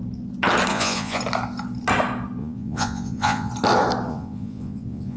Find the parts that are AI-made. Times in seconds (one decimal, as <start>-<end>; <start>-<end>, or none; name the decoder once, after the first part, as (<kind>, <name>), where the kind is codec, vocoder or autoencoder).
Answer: 0.7-1.2 (vocoder, Vocos); 2.4-3.5; 4.1-5.2